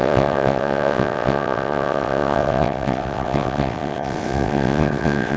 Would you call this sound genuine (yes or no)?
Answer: no